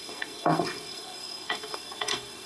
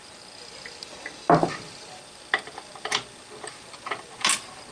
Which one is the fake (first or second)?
first